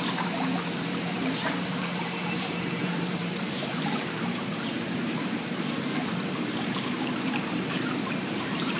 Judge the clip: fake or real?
fake